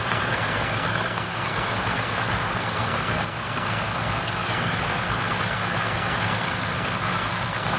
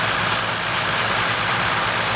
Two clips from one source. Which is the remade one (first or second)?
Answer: first